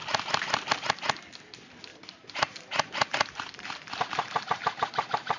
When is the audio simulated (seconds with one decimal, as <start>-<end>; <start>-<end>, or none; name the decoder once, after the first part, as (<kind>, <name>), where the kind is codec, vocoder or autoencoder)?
1.9-5.4 (vocoder, BigVGAN v2)